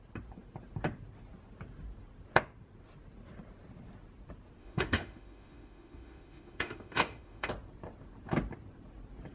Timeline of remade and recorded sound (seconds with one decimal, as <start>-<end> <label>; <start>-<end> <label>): 0.0-4.6 recorded; 4.6-7.5 remade; 7.5-9.3 recorded